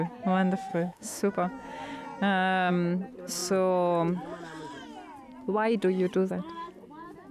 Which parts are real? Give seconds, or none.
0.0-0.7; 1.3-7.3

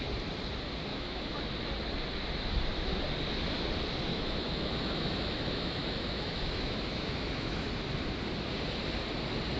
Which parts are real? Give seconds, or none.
0.0-0.9; 1.4-4.1; 7.7-9.6

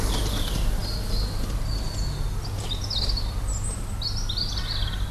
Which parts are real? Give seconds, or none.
0.0-5.1

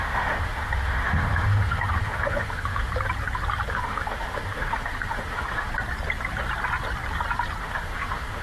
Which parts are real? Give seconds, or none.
2.9-3.7; 5.7-7.6

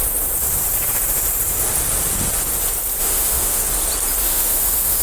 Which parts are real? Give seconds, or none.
0.0-3.0; 3.6-4.2

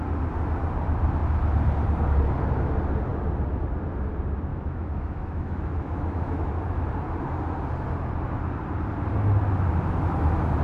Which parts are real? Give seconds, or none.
0.0-4.5; 6.5-10.6

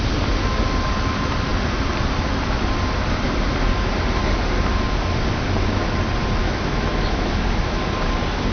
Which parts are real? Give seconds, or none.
0.0-6.4; 7.8-8.5

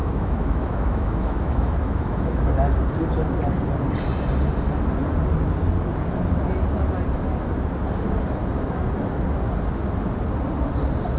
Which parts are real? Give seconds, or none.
2.4-11.2